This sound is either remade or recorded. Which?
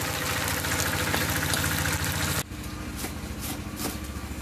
recorded